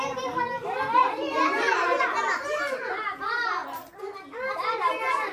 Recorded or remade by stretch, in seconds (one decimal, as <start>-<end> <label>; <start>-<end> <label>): 0.0-5.3 recorded